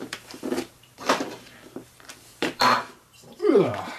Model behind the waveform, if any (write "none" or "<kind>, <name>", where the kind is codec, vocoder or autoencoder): vocoder, BigVGAN v2